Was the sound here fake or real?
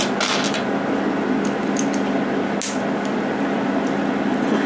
real